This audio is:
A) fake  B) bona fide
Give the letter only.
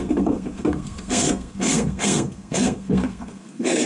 A